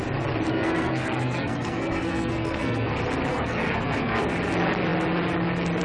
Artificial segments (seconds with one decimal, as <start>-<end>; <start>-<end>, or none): 0.5-2.9; 3.3-4.2